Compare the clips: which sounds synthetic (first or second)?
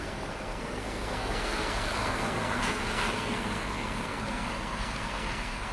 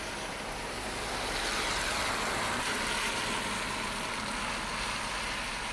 first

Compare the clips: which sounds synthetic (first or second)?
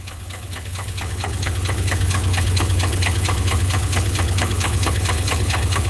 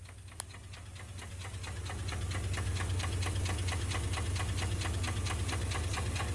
first